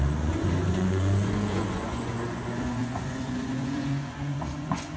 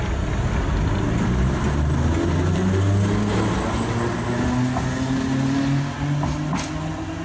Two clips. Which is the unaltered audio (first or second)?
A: second